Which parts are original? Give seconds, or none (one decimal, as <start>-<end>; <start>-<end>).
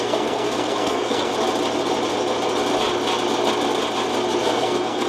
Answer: 1.3-4.4